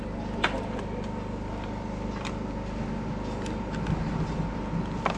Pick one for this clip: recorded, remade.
recorded